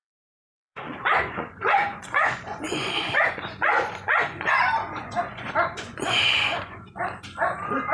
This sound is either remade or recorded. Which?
remade